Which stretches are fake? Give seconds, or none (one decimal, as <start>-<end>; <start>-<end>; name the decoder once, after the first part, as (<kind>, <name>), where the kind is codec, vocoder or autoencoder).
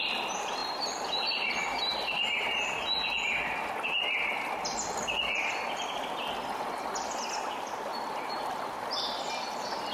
7.9-8.7 (vocoder, BigVGAN v2)